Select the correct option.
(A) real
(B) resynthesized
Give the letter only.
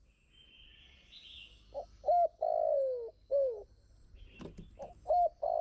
A